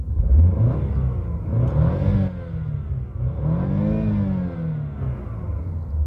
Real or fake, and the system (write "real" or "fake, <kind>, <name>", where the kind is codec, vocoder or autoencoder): real